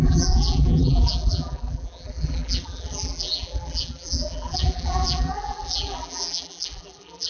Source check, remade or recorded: remade